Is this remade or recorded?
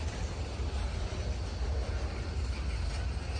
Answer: recorded